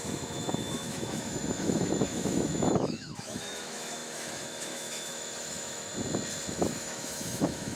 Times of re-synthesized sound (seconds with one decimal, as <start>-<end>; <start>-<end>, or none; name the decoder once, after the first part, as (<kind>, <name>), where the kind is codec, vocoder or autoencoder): 0.0-5.9 (autoencoder, DAC-VAE); 6.5-7.8